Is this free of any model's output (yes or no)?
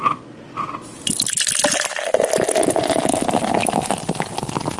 yes